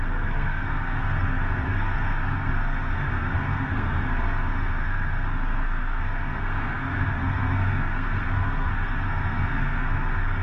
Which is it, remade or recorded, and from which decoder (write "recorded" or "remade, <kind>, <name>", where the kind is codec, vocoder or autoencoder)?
remade, codec, SNAC